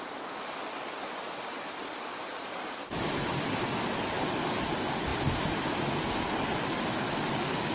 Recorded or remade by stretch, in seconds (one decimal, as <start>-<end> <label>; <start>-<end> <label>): 0.0-7.7 recorded